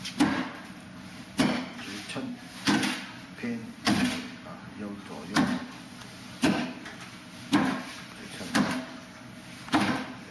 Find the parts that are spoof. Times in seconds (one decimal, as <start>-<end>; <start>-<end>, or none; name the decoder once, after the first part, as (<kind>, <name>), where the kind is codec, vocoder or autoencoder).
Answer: none